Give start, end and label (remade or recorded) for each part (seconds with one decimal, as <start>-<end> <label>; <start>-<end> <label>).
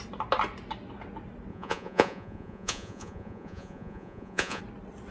0.0-1.5 recorded; 1.5-4.6 remade; 4.6-5.1 recorded